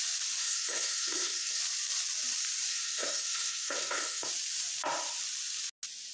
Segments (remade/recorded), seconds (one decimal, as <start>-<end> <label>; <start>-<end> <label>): 0.0-0.4 recorded; 0.4-1.6 remade; 1.6-2.7 recorded; 2.7-4.3 remade; 4.3-6.1 recorded